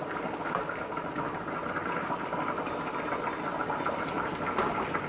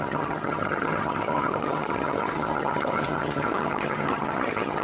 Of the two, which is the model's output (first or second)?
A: second